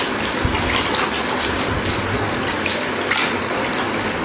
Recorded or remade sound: recorded